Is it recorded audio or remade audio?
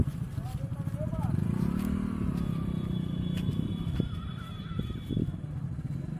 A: recorded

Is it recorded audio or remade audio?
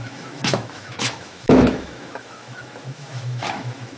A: remade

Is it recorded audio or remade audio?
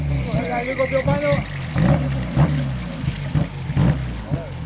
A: recorded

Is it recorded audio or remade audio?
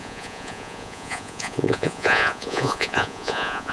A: remade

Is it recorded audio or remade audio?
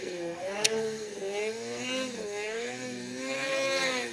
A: remade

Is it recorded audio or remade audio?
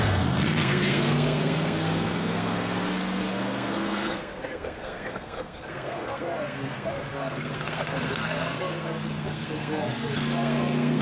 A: remade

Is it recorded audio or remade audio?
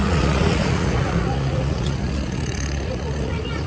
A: remade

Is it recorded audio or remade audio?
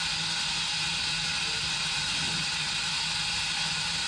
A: recorded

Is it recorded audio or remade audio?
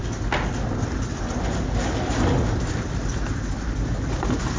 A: recorded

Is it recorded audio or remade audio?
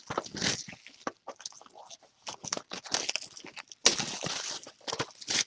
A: recorded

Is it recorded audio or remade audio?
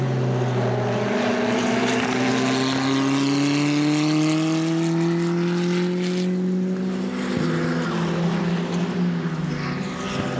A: recorded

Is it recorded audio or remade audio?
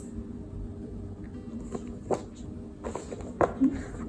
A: recorded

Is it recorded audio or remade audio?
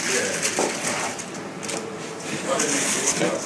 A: recorded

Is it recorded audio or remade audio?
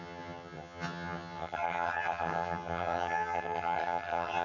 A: remade